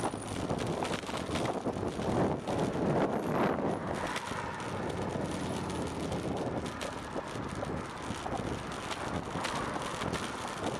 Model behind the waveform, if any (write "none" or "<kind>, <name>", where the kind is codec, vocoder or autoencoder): none